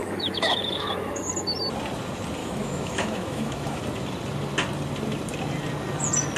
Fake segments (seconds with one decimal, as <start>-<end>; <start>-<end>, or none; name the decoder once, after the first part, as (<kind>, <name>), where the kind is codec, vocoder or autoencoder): 0.0-1.2 (autoencoder, DAC-VAE); 2.4-3.8